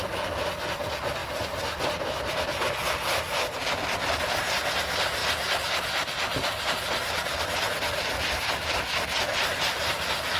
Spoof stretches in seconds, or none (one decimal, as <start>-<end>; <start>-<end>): none